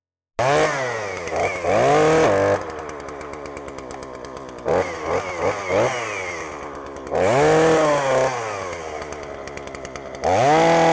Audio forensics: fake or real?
real